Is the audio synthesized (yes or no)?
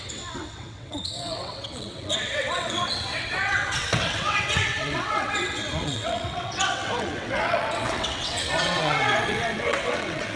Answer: yes